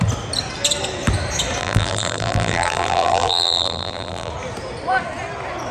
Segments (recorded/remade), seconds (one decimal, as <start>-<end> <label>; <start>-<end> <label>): 0.0-1.6 recorded; 1.6-4.3 remade; 4.3-5.7 recorded